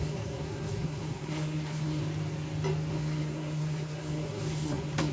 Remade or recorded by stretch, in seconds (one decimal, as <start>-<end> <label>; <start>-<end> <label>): 0.0-2.0 remade; 2.0-2.9 recorded; 2.9-5.1 remade